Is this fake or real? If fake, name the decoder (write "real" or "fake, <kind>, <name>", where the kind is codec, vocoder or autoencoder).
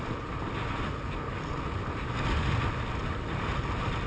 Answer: real